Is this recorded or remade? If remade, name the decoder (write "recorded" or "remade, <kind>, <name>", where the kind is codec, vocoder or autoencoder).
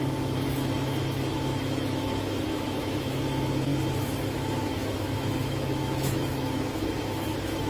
remade, autoencoder, DAC-VAE